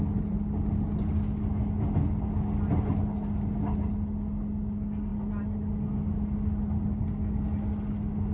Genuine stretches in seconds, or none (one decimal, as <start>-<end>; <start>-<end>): 0.0-8.3